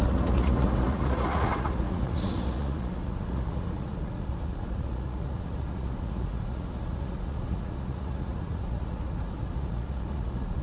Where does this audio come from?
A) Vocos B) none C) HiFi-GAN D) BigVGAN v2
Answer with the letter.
A